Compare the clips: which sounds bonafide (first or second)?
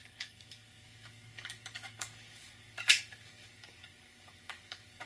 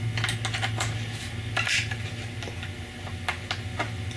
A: second